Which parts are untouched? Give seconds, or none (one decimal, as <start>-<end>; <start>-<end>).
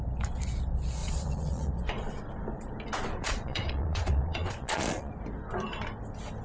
0.0-1.0; 1.7-3.2; 5.1-6.4